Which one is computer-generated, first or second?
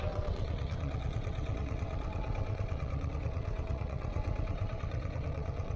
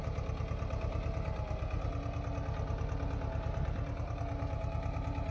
first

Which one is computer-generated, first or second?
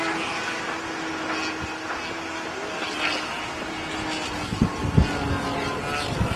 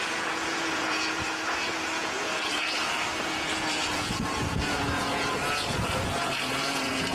second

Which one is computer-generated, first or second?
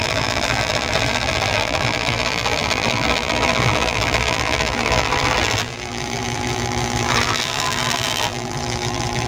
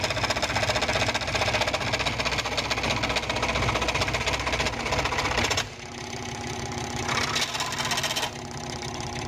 first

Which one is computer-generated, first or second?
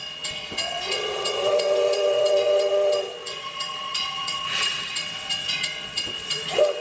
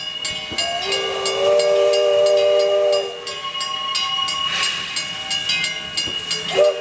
first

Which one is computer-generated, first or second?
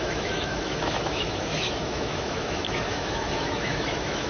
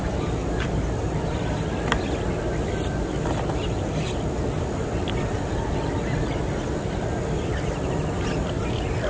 first